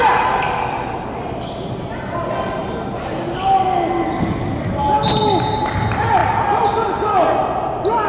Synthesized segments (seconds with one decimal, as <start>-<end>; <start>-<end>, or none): none